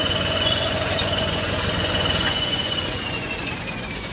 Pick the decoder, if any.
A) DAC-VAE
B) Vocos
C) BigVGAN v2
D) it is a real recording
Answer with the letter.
B